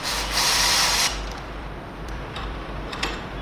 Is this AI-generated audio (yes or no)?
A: yes